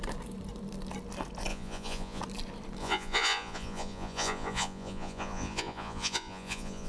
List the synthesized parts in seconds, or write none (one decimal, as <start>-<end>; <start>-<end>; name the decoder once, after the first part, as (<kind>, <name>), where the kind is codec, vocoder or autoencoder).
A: 1.5-2.2 (vocoder, Vocos); 2.8-6.9